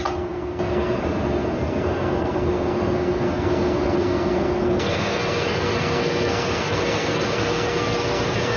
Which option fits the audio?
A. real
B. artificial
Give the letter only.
B